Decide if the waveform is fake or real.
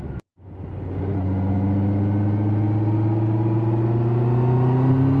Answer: real